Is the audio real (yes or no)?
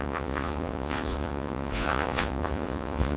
no